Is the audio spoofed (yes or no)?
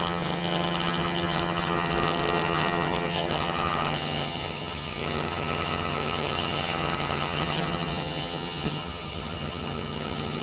yes